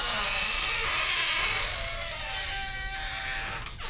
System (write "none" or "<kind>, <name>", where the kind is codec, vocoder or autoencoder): none